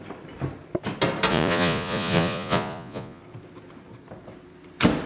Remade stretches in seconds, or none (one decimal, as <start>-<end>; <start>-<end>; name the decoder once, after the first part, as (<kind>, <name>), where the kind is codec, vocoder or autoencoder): 1.3-3.2 (vocoder, Vocos)